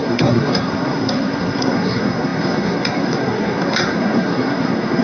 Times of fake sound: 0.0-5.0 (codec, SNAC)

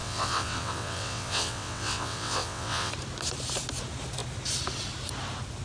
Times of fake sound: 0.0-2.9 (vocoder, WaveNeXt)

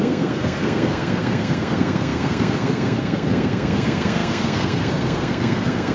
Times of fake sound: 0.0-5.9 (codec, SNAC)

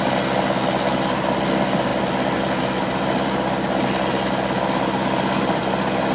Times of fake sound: none

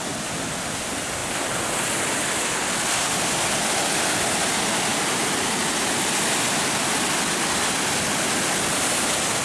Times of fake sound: none

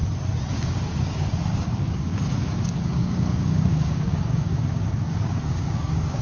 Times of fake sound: 0.5-6.2 (codec, DAC)

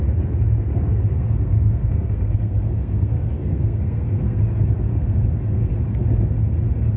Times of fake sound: 1.1-4.4 (codec, SNAC); 4.9-5.7